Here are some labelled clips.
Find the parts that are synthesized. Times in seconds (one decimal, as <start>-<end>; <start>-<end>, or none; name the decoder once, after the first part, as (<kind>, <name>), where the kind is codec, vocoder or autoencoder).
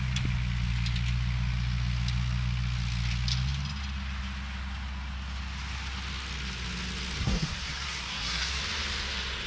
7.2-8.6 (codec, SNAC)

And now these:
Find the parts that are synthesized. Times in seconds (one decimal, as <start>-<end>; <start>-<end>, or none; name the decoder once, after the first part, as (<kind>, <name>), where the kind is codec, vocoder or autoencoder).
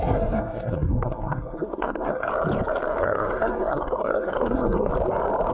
0.0-2.3 (codec, SNAC); 3.0-4.9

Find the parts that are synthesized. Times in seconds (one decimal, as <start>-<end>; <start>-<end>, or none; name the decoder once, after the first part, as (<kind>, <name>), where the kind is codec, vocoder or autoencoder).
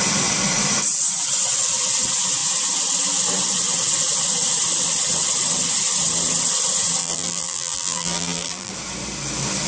7.0-8.7 (vocoder, BigVGAN v2)